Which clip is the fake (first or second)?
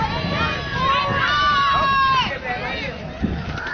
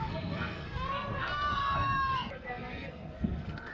second